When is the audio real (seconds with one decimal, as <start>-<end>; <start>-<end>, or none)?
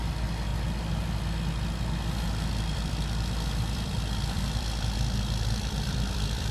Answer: 0.5-2.2